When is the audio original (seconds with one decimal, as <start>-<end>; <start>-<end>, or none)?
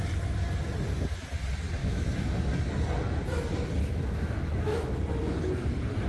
0.0-1.8; 2.4-3.8; 5.0-6.1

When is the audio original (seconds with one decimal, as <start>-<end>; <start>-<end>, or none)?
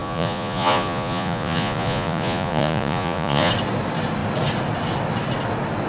3.5-5.9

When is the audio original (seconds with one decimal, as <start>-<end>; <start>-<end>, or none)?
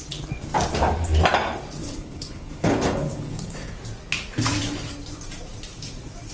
0.0-1.8; 3.7-6.3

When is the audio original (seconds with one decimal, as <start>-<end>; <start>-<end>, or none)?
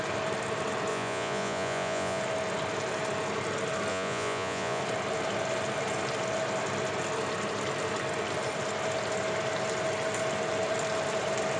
0.0-0.9; 2.2-3.9; 4.8-11.6